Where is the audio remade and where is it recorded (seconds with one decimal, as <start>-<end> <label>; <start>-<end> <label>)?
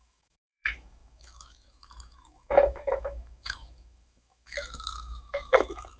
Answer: 0.0-6.0 remade